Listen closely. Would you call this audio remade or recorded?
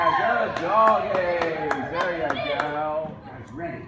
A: recorded